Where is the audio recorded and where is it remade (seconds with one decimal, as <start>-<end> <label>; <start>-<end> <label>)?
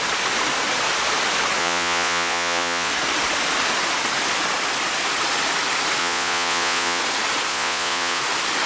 0.0-1.6 recorded; 1.6-2.9 remade; 2.9-6.0 recorded; 6.0-7.0 remade; 7.0-7.5 recorded; 7.5-8.2 remade; 8.2-8.7 recorded